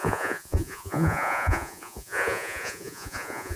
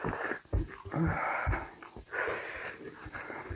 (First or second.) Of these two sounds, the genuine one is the second